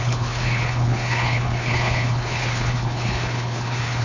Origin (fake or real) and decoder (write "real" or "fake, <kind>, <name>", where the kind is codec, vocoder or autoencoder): fake, codec, HILCodec